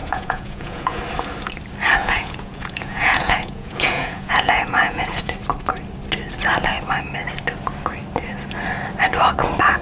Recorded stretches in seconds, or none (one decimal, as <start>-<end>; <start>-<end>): 1.0-2.0; 5.3-9.8